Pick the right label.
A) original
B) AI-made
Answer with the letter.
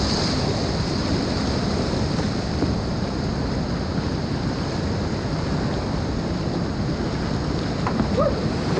A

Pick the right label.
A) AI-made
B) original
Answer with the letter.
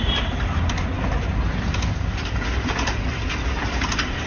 B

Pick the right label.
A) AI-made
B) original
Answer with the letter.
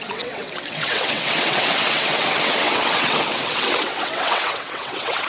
A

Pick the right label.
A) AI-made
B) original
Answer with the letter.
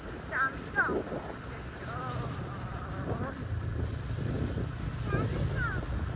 B